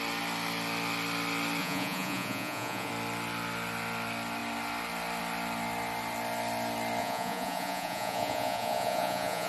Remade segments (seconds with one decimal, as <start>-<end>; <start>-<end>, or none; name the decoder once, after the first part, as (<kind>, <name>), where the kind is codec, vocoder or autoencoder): 1.6-2.9 (vocoder, Vocos); 7.0-9.5